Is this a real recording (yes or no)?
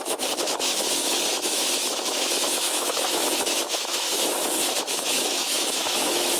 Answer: no